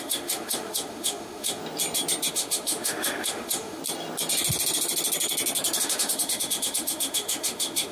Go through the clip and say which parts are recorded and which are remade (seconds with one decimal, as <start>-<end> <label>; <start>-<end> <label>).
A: 0.0-1.6 remade; 1.6-2.3 recorded; 2.3-3.8 remade; 3.8-5.8 recorded; 5.8-7.9 remade